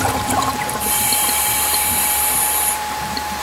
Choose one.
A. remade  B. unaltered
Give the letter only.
A